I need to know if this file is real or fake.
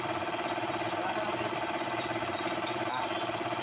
real